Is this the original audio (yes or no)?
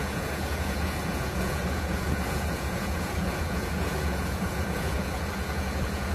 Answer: no